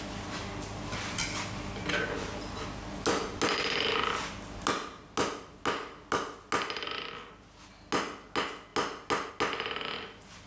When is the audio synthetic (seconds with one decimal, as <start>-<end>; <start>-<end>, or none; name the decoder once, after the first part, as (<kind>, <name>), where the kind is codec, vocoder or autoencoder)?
none